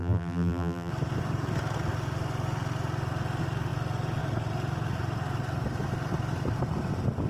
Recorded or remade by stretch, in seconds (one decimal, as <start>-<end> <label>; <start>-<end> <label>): 0.0-0.9 remade; 0.9-7.3 recorded